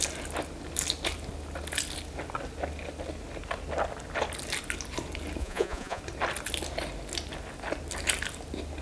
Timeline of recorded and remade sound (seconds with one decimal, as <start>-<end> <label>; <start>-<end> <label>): 0.0-5.4 recorded; 5.4-6.0 remade; 6.0-8.8 recorded